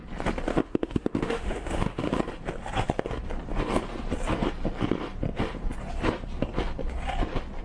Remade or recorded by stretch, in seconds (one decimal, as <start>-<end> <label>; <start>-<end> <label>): 0.0-0.5 recorded; 0.5-2.2 remade; 2.2-7.6 recorded